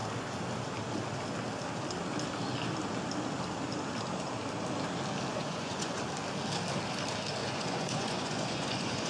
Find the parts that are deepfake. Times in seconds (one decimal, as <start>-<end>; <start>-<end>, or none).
5.3-6.0; 7.4-9.1